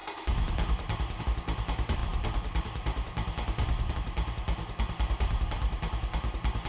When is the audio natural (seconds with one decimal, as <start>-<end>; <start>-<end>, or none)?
0.0-6.7